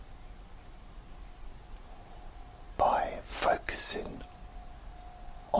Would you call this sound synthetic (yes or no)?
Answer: no